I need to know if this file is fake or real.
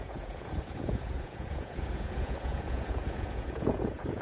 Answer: fake